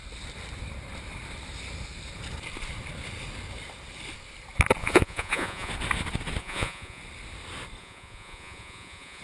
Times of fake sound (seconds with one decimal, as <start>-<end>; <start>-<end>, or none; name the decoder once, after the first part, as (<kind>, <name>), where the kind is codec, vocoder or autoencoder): 4.8-5.7 (vocoder, Vocos); 6.4-7.0; 7.8-9.2